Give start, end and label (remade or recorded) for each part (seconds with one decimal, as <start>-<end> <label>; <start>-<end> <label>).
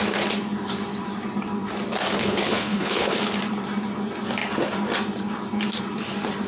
0.0-2.2 recorded; 2.2-3.2 remade; 3.2-6.5 recorded